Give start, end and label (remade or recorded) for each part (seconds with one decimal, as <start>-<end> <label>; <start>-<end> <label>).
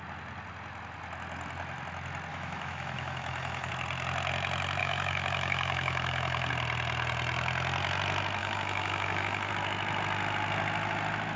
0.0-2.3 recorded; 2.3-3.7 remade; 3.7-4.8 recorded; 4.8-6.5 remade; 6.5-8.4 recorded; 8.4-9.5 remade; 9.5-11.4 recorded